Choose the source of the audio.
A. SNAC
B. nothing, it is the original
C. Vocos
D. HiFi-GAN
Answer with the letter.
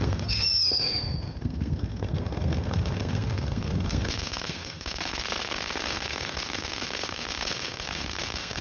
A